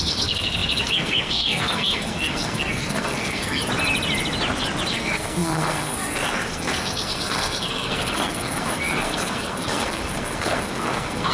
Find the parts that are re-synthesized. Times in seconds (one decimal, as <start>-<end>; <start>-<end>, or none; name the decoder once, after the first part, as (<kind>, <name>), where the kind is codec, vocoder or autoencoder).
0.0-3.6 (codec, SNAC); 4.9-11.3